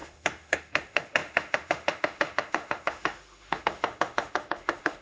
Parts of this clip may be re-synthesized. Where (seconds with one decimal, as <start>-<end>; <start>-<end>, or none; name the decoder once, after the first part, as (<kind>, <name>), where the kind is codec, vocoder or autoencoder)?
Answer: 0.0-5.0 (autoencoder, DAC-VAE)